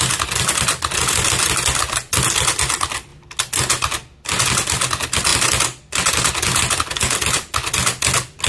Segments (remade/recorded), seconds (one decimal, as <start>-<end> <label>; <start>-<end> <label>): 0.0-8.5 recorded